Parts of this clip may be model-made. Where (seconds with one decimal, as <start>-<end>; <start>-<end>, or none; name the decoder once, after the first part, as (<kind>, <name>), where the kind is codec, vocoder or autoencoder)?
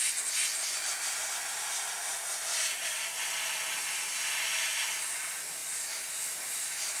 none